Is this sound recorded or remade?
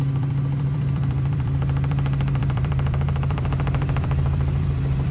remade